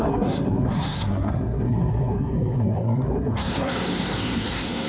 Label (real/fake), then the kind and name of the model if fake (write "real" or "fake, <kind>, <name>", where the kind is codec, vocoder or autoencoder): fake, codec, SNAC